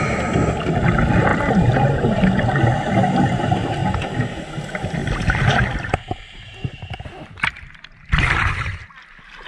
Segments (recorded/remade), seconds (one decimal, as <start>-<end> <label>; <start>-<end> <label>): 0.0-5.0 recorded; 5.0-5.6 remade; 5.6-9.5 recorded